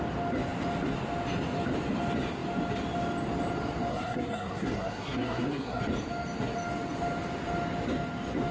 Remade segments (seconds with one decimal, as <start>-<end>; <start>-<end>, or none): 3.9-5.8